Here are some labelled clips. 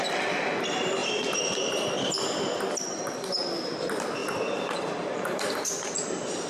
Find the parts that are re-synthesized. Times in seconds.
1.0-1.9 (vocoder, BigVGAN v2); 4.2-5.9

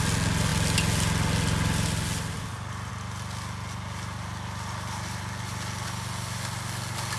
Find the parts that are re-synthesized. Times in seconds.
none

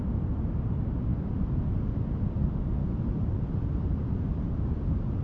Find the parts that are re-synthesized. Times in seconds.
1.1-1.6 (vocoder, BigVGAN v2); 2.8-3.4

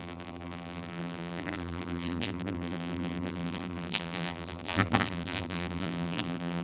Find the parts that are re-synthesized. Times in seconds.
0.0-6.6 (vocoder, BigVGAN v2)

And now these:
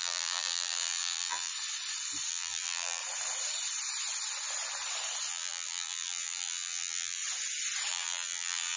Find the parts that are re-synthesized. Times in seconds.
0.0-1.5 (vocoder, BigVGAN v2); 2.3-3.0; 5.3-7.2; 7.9-8.8

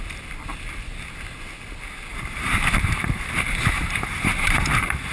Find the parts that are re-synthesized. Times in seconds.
2.1-5.1 (vocoder, BigVGAN v2)

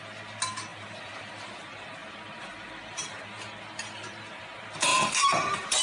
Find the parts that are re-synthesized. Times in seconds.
0.7-1.3 (vocoder, BigVGAN v2); 4.9-5.8